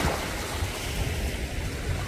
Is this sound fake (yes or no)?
no